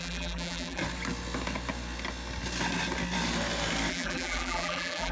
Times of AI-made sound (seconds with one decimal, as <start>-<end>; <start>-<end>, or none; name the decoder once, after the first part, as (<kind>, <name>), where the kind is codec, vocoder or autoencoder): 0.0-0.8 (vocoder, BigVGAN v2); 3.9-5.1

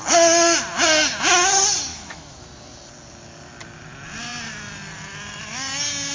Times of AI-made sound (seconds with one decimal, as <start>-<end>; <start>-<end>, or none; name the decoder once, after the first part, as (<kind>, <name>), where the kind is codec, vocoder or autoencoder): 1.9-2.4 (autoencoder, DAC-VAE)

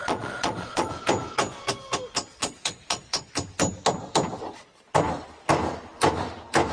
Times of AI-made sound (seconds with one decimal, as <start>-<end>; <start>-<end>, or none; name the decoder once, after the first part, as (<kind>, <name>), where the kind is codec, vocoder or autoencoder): 0.0-0.9 (vocoder, Vocos); 2.3-3.3

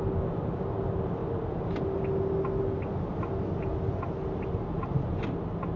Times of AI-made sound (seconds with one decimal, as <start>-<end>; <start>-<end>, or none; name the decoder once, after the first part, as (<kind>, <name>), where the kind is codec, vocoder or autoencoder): none

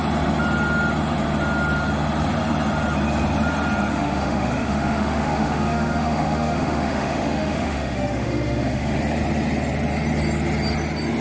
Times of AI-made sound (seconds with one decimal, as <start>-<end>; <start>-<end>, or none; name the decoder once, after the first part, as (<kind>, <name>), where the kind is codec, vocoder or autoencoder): 3.9-9.0 (autoencoder, DAC-VAE)

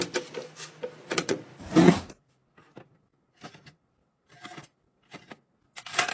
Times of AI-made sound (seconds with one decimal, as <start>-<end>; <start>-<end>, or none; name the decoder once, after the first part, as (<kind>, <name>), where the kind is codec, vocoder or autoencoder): 1.0-1.9 (vocoder, Vocos)

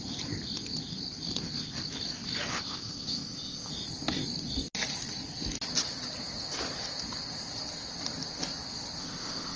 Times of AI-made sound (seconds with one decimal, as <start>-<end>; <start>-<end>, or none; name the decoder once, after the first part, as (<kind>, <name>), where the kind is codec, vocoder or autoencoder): 2.5-3.7 (codec, ZipCodec); 9.0-9.6